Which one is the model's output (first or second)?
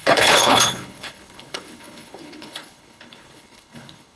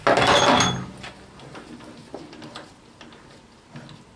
first